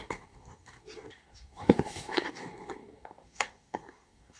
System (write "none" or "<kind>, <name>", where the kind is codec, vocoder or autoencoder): codec, SNAC